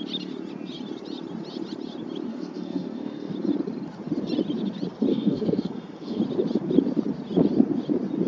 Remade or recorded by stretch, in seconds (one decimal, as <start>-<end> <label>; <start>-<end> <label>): 0.0-2.3 recorded; 2.3-3.3 remade; 3.3-5.1 recorded; 5.1-6.2 remade; 6.2-8.3 recorded